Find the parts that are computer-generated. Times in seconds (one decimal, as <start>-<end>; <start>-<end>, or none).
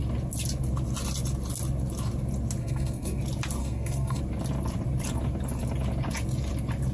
2.6-3.2; 3.6-4.2